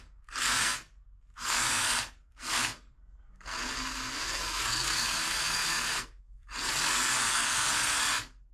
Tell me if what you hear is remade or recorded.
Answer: remade